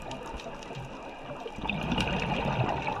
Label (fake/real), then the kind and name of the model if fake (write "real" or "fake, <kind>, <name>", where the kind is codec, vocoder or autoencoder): real